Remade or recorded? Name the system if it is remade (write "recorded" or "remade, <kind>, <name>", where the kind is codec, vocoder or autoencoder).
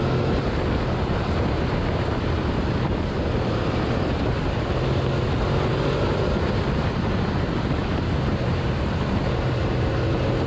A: remade, vocoder, BigVGAN v2